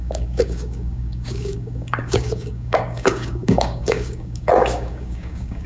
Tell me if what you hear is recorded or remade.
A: remade